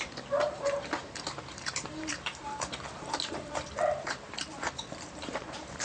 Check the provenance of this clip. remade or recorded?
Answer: remade